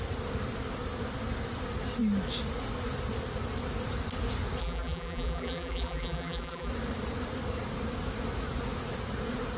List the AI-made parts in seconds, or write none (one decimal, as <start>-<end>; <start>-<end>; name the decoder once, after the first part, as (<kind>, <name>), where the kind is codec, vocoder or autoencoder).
4.6-6.7 (vocoder, BigVGAN v2)